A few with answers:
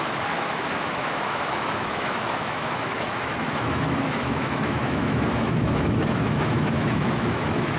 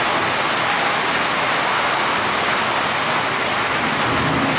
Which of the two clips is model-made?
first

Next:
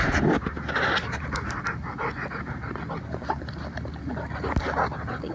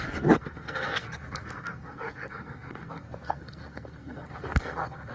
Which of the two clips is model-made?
second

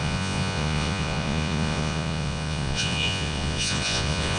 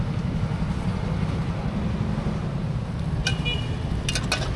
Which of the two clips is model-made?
first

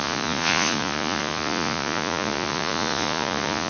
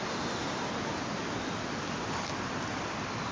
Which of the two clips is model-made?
first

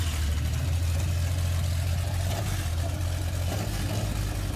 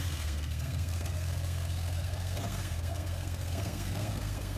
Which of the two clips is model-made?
second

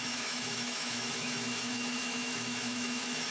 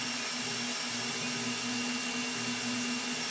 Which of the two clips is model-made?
first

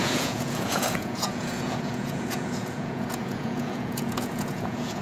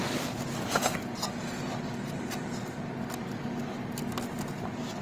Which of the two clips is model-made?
first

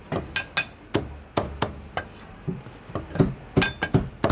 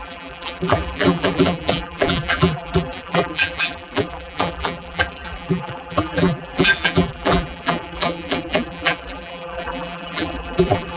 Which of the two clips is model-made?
second